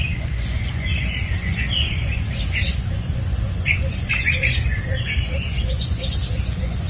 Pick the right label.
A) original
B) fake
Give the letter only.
B